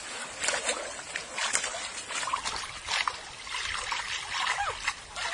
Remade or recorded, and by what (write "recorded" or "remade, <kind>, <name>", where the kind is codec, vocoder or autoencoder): recorded